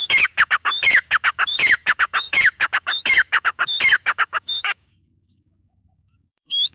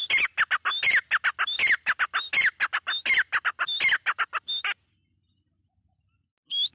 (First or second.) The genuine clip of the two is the second